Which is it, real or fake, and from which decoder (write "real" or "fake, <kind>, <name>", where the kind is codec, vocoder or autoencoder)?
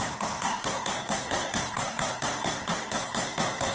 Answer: fake, codec, SNAC